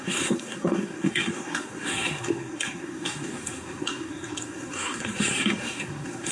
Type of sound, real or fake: fake